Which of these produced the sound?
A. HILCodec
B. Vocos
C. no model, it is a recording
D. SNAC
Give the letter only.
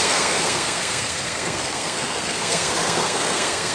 D